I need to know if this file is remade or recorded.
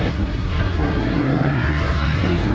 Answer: remade